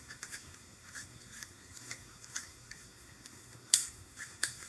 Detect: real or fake fake